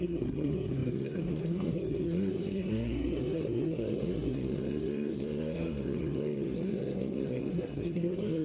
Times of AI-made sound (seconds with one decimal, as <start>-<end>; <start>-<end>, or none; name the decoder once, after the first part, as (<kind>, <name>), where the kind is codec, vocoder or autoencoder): 0.0-8.4 (codec, SNAC)